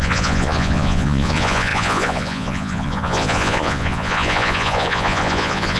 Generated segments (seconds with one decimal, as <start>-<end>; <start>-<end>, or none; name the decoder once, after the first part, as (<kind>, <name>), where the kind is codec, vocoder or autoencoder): 0.0-5.8 (vocoder, Vocos)